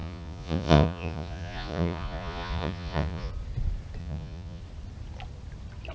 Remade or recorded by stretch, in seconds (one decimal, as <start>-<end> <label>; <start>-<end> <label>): 0.0-3.3 remade; 3.3-4.0 recorded; 4.0-4.6 remade; 4.6-5.9 recorded